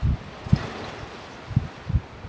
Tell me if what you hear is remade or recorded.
recorded